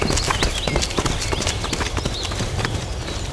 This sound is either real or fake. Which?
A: real